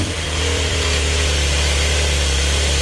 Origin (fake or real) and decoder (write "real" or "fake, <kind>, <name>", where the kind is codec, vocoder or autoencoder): fake, vocoder, BigVGAN v2